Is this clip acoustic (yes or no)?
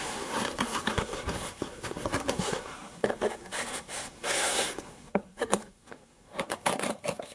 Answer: no